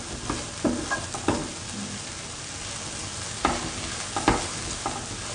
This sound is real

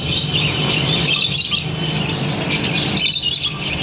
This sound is real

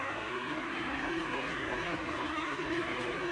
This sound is fake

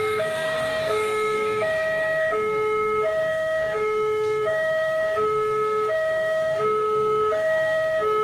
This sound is fake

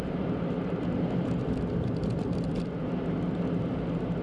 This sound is real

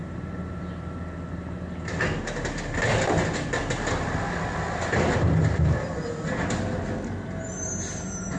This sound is real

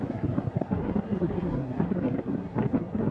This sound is fake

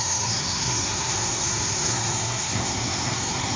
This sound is fake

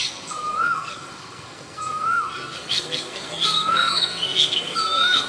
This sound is fake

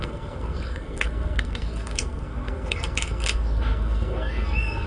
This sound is fake